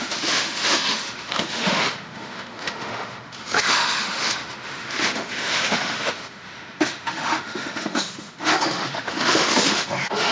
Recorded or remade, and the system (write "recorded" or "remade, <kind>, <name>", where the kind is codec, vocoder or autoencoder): remade, autoencoder, DAC-VAE